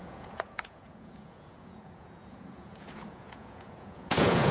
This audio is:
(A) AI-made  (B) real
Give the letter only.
A